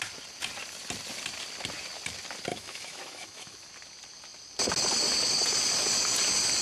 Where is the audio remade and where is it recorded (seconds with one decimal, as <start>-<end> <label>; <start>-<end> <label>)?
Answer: 0.0-2.5 recorded; 2.5-3.7 remade; 3.7-6.6 recorded